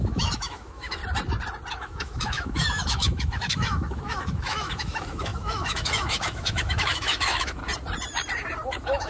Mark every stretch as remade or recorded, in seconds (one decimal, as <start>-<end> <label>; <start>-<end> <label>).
0.0-1.0 remade; 1.0-1.7 recorded; 1.7-7.6 remade; 7.6-8.7 recorded; 8.7-9.1 remade